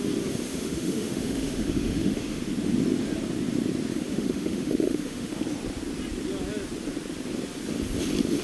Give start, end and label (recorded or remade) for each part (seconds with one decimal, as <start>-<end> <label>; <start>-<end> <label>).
0.0-0.5 recorded; 0.5-2.4 remade; 2.4-3.9 recorded; 3.9-5.4 remade; 5.4-8.4 recorded